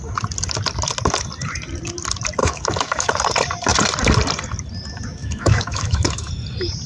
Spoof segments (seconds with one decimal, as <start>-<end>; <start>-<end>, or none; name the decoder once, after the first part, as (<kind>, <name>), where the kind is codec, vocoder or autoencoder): 2.4-3.1 (autoencoder, DAC-VAE); 5.2-6.3